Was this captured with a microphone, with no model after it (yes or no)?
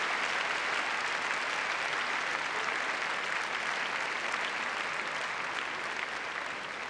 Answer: yes